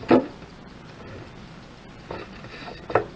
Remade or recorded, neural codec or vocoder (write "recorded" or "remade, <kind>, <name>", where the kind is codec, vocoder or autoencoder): recorded